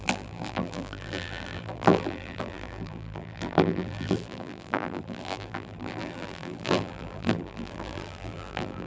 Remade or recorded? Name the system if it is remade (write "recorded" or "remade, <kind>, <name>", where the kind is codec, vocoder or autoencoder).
remade, vocoder, BigVGAN v2